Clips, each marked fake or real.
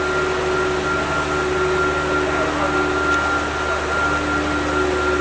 real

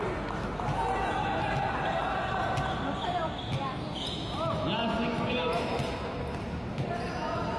real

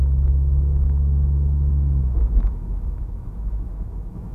fake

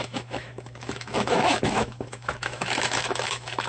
fake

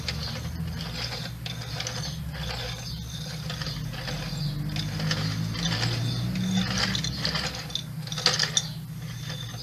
real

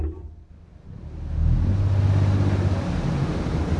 real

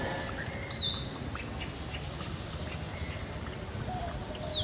real